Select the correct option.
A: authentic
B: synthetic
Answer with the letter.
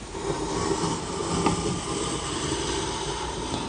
A